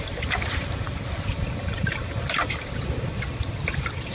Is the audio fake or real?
real